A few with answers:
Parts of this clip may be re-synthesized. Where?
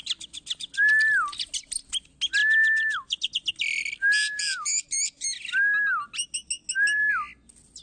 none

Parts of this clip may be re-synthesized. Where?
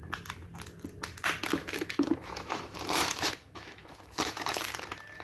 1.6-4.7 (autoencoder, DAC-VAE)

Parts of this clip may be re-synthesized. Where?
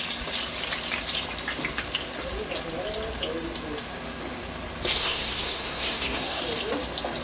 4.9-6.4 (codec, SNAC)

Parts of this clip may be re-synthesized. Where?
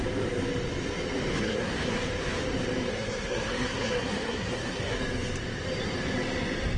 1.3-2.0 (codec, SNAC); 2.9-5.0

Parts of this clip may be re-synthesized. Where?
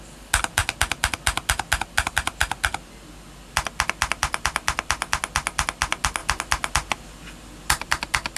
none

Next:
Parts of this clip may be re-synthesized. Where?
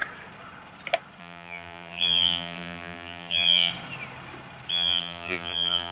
1.2-3.7 (vocoder, BigVGAN v2); 4.7-5.9